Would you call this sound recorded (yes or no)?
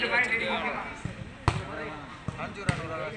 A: yes